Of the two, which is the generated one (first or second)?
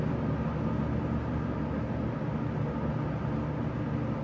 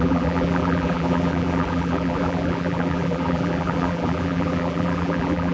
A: second